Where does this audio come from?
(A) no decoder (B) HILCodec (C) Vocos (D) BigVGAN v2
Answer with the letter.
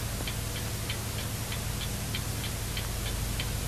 A